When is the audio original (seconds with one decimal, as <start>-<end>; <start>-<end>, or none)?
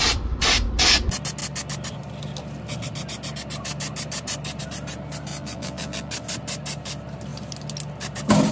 0.0-5.3; 6.1-8.5